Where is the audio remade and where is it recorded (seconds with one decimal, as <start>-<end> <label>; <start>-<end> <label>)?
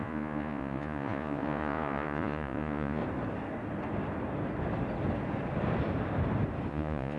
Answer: 0.0-3.0 remade; 3.0-6.7 recorded; 6.7-7.2 remade